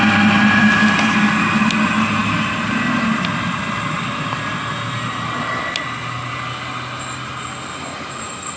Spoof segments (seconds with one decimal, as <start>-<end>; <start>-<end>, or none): none

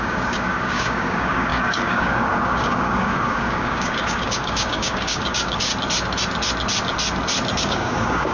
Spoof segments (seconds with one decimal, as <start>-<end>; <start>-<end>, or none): 0.0-5.7; 7.6-8.3

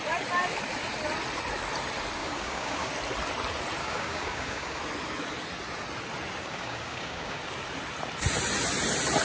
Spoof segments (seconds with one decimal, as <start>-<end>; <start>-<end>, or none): 2.2-2.9; 3.8-4.8; 6.4-7.4

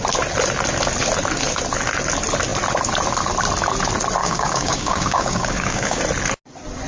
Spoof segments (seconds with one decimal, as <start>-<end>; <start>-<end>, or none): 4.2-6.0

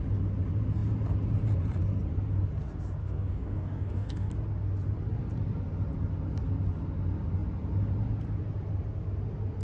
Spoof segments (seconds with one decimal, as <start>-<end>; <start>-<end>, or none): 3.0-4.3